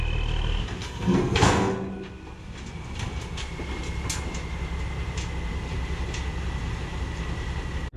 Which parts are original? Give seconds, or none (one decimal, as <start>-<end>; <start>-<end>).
0.0-0.8; 1.7-8.0